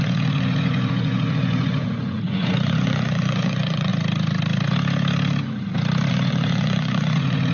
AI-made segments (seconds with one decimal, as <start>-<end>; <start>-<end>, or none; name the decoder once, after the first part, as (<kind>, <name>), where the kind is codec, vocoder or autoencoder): 0.0-3.9 (vocoder, Vocos); 6.1-7.5